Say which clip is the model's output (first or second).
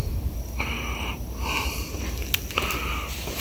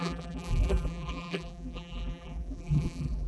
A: second